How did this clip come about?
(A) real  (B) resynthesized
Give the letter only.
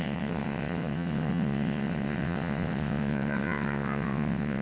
B